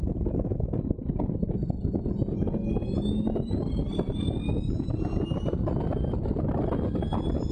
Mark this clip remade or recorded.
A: recorded